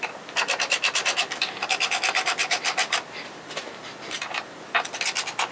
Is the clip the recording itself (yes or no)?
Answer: yes